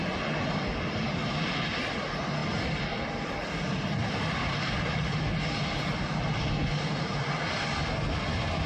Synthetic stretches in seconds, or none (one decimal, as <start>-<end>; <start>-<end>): 2.4-5.3